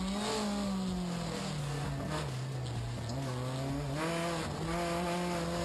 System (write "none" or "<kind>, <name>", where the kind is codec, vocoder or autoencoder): none